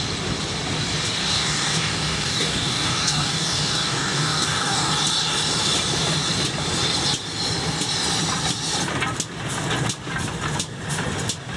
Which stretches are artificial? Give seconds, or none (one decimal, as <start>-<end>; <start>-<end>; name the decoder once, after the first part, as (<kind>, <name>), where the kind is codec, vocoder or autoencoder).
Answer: 1.2-4.9 (codec, DAC)